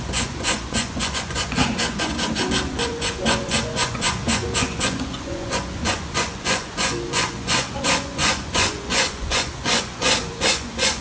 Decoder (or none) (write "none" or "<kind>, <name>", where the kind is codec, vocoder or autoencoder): vocoder, Vocos